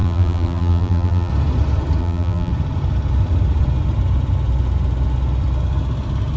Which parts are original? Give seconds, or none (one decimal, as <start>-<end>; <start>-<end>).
1.3-2.0; 2.5-6.4